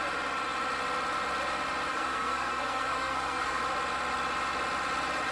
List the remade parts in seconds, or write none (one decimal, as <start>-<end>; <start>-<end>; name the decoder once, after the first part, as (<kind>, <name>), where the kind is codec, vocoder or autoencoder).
1.9-3.6 (codec, SNAC)